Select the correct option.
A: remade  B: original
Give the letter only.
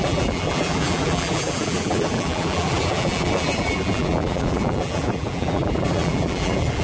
A